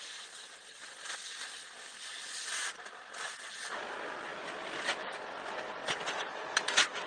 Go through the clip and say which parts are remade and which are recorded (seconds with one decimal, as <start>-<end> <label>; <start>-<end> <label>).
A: 0.0-7.1 recorded